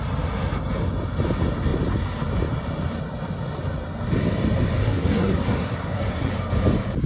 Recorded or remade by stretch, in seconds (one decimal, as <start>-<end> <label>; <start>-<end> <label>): 0.0-4.8 recorded; 4.8-6.3 remade; 6.3-7.1 recorded